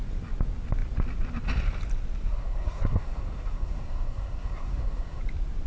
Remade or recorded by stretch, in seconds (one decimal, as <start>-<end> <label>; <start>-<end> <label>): 0.0-2.3 recorded; 2.3-5.2 remade; 5.2-5.7 recorded

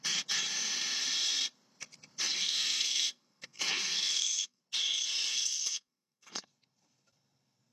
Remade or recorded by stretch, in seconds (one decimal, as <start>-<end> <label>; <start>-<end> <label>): 0.0-2.4 recorded; 2.4-4.6 remade; 4.6-5.3 recorded; 5.3-6.5 remade; 6.5-7.7 recorded